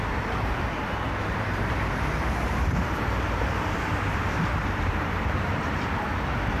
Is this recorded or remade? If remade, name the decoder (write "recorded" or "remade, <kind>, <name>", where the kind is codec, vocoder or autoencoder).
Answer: remade, vocoder, BigVGAN v2